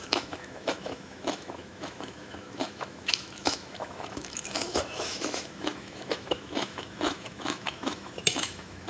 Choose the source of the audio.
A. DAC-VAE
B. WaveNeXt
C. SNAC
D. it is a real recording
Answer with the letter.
A